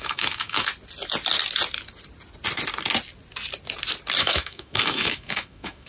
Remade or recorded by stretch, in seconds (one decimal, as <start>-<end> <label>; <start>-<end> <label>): 0.0-0.7 remade; 0.7-4.2 recorded; 4.2-5.9 remade